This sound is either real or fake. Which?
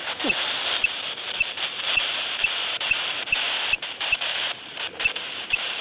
fake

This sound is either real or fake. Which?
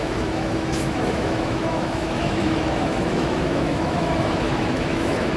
fake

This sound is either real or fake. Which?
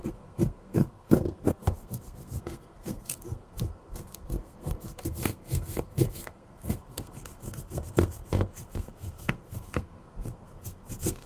fake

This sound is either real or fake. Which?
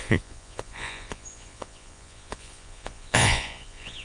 fake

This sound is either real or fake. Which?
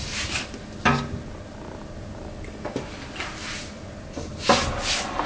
real